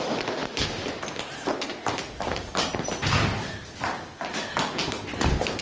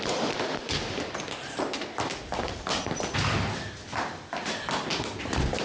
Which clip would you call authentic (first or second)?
first